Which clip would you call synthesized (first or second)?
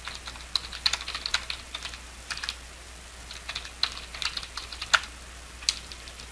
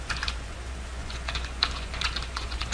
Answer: second